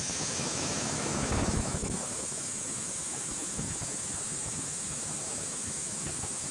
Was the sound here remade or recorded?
remade